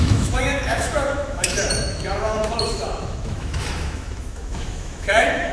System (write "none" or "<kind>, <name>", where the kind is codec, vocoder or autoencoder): autoencoder, DAC-VAE